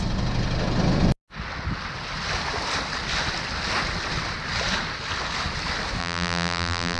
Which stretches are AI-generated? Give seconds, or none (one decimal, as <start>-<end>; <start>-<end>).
6.0-7.0